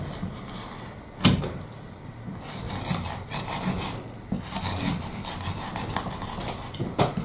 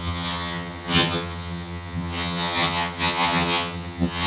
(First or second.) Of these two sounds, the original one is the first